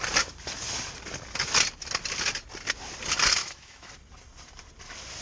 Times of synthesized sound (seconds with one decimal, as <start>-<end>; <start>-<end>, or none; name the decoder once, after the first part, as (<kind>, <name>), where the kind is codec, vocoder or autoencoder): 3.4-3.9 (autoencoder, DAC-VAE)